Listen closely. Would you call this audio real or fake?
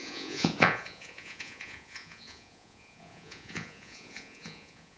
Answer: fake